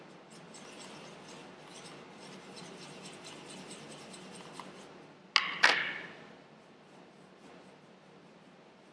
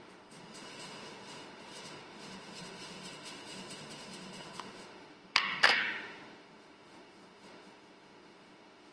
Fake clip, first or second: second